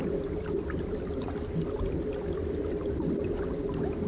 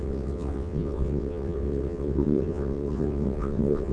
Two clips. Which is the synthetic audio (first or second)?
second